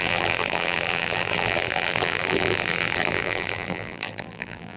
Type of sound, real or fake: fake